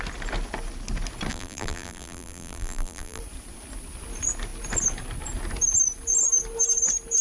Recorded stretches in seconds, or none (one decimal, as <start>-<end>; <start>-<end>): 0.0-1.3; 3.2-7.2